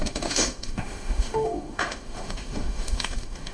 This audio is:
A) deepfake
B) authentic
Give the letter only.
A